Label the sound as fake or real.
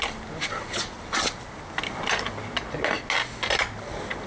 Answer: real